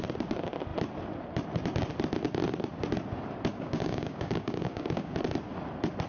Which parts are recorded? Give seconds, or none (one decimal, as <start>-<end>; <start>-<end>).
0.0-3.5; 5.1-6.1